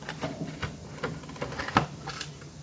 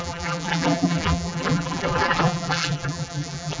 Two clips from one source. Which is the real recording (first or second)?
first